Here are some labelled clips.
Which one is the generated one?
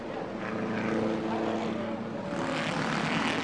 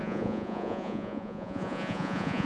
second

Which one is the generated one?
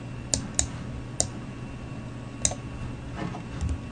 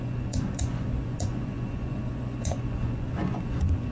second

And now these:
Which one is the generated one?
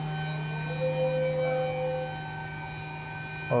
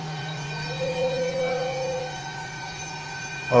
second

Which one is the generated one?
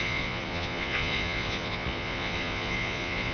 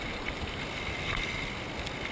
first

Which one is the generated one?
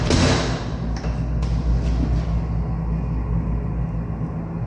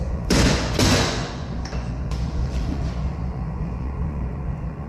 second